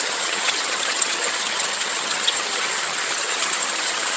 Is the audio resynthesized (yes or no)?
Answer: yes